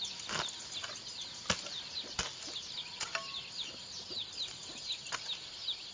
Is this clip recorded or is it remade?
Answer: recorded